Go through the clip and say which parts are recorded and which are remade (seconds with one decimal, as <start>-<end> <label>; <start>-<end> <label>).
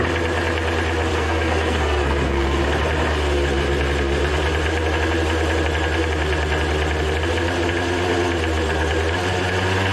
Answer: 0.0-1.1 recorded; 1.1-2.6 remade; 2.6-9.9 recorded